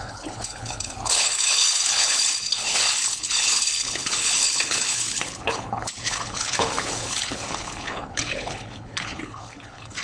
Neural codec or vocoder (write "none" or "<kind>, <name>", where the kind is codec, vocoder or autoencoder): codec, HILCodec